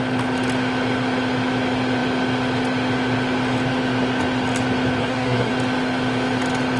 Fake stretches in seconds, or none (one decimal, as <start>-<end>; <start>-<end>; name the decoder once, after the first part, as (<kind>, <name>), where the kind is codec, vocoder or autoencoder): 5.0-5.5 (codec, SNAC)